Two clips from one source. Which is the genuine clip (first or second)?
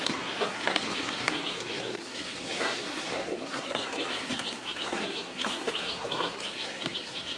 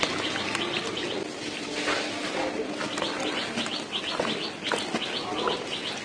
second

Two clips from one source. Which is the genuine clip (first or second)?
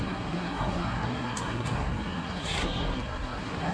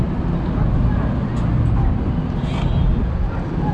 second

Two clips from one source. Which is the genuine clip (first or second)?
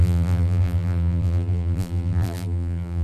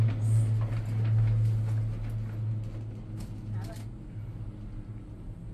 second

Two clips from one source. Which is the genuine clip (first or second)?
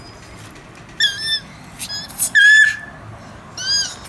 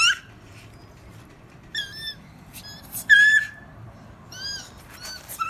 first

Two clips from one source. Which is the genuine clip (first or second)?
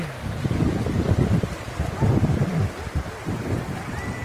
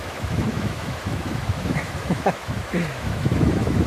first